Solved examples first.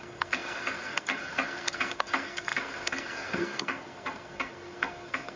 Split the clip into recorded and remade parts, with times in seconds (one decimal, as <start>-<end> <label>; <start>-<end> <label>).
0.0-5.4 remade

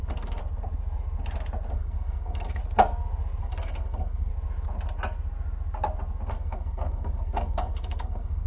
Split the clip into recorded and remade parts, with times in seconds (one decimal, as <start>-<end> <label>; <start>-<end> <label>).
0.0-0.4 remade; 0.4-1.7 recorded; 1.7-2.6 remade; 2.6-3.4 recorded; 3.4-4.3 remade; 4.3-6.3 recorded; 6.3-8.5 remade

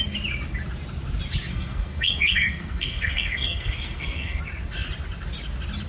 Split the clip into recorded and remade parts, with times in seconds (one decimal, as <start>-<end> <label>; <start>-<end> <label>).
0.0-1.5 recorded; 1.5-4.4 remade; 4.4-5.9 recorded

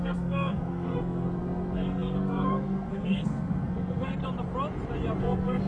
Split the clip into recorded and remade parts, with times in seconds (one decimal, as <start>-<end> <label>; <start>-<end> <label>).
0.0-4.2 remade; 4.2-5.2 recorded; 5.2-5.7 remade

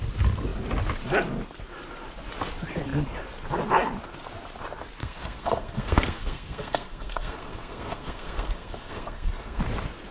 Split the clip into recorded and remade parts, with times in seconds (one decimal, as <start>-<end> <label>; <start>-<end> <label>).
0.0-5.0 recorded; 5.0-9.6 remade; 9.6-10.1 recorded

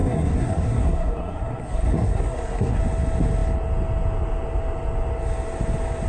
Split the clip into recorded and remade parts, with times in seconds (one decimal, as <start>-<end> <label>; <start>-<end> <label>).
0.0-2.8 remade; 2.8-6.1 recorded

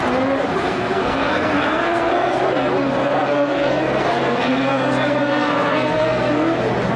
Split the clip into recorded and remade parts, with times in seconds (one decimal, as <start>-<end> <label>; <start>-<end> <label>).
0.0-0.5 recorded; 0.5-2.4 remade; 2.4-3.0 recorded; 3.0-6.6 remade; 6.6-7.0 recorded

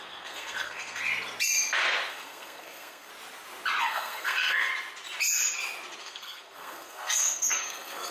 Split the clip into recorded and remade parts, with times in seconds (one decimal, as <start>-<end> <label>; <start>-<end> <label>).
0.0-1.0 remade; 1.0-2.1 recorded; 2.1-3.1 remade; 3.1-3.8 recorded; 3.8-4.7 remade; 4.7-6.0 recorded; 6.0-8.1 remade